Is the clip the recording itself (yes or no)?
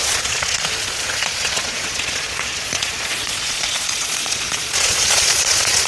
no